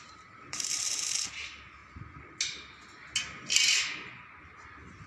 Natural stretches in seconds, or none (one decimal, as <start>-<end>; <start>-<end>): 1.8-5.1